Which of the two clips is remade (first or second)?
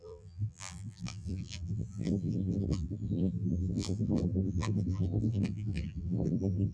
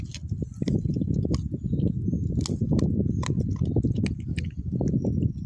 first